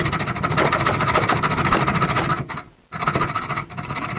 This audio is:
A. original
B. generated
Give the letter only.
A